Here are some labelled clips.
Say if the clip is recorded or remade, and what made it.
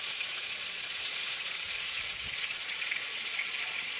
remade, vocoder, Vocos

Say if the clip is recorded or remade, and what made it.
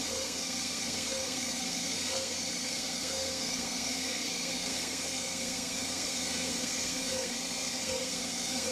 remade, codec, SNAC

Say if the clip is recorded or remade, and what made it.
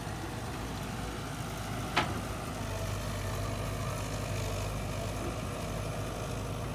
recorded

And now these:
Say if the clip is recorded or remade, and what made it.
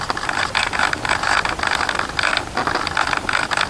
recorded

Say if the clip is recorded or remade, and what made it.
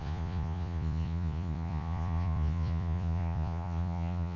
remade, vocoder, Vocos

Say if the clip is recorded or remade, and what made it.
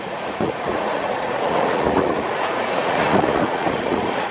remade, vocoder, Vocos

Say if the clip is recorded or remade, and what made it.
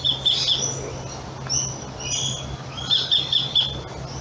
recorded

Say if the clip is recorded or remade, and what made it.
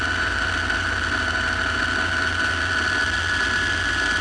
recorded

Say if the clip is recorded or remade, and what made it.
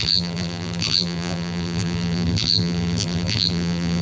remade, vocoder, BigVGAN v2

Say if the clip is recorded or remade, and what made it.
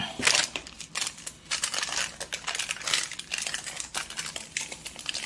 recorded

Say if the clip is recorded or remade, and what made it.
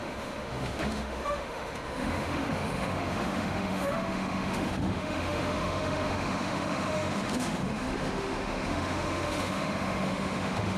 remade, autoencoder, DAC-VAE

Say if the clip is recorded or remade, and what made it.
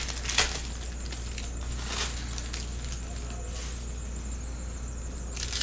recorded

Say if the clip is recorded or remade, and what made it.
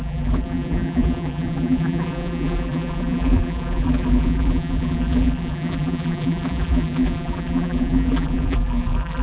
remade, vocoder, BigVGAN v2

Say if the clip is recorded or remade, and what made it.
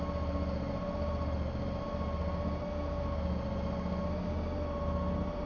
recorded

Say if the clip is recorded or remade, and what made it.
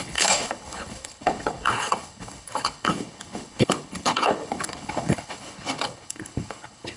remade, codec, HILCodec